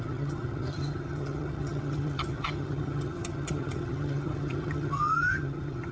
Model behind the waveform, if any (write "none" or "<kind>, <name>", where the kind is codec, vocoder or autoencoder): vocoder, HiFi-GAN